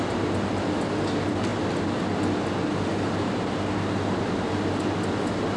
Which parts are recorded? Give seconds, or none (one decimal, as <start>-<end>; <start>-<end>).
0.0-5.6